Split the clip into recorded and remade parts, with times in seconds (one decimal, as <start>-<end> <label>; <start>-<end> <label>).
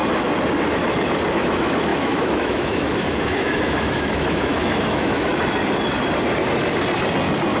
0.0-1.3 recorded; 1.3-5.3 remade; 5.3-7.6 recorded